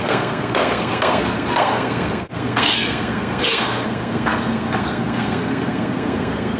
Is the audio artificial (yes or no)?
yes